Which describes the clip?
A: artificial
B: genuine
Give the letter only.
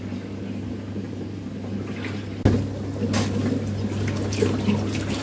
B